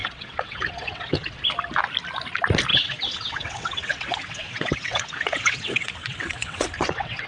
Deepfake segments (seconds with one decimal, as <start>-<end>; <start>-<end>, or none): 0.0-1.4; 2.7-7.3

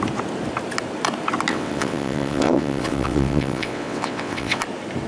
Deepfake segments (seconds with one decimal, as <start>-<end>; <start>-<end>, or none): 1.5-4.6

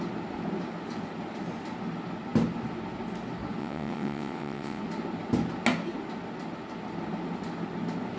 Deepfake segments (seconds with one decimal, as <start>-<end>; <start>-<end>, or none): 3.6-4.8

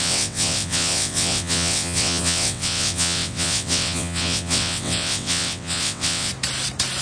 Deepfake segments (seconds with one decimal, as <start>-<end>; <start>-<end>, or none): 0.0-6.3

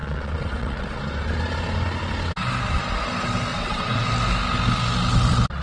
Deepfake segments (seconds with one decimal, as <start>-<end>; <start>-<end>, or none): 0.0-1.0; 3.5-4.1